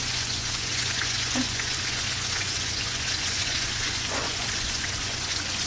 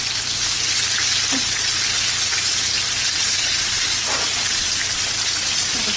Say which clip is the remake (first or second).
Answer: first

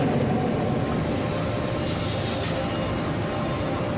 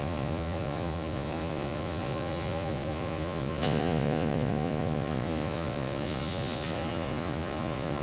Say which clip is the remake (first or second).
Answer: second